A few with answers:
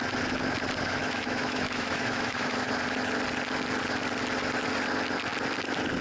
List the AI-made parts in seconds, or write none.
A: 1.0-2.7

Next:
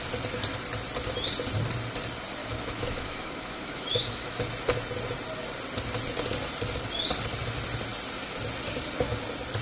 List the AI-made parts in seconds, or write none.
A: 2.4-4.4

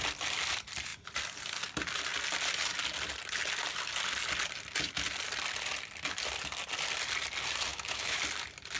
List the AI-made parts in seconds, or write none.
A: 7.7-8.2

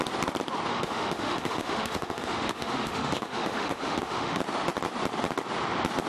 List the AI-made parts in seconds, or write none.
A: 0.7-4.4

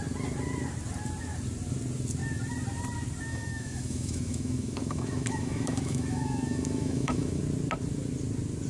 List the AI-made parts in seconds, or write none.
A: 3.3-7.4

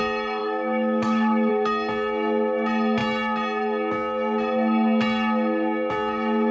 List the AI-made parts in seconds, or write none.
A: 0.4-1.5

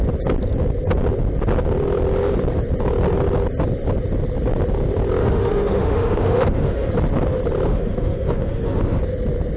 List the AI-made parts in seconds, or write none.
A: 5.2-6.9; 7.7-9.0

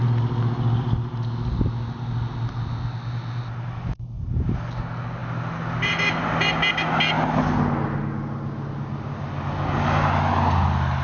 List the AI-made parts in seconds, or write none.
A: none